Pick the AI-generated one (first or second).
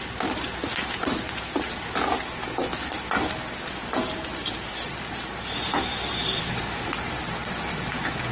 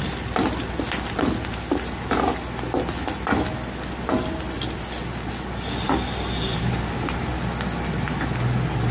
first